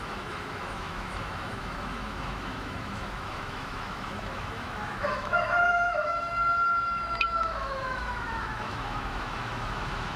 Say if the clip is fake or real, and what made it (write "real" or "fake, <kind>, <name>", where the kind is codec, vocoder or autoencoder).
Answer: fake, autoencoder, DAC-VAE